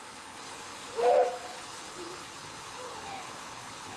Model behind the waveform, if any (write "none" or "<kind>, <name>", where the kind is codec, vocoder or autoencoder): codec, HILCodec